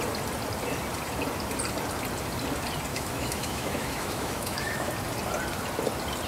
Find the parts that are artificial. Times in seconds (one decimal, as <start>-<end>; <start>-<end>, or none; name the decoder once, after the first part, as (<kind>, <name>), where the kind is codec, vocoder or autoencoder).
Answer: 2.9-4.9 (autoencoder, DAC-VAE)